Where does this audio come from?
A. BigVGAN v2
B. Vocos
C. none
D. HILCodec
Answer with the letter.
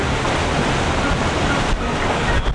C